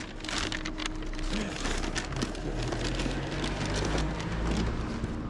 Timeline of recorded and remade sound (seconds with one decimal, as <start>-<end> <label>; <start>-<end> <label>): 0.0-5.3 recorded